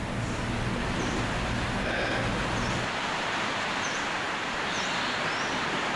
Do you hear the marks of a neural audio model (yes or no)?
no